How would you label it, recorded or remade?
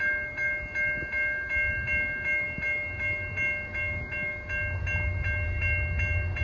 recorded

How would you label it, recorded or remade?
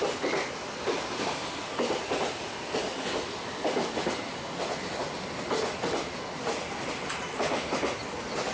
recorded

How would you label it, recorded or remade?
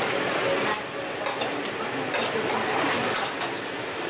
recorded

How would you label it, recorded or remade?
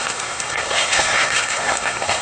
remade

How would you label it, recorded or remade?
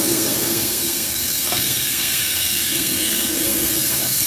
remade